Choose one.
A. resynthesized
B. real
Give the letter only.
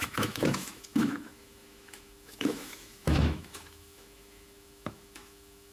A